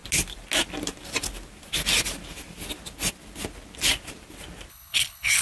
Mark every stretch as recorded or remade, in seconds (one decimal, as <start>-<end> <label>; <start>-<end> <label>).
0.0-4.7 recorded; 4.7-5.4 remade